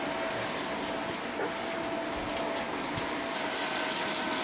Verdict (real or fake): real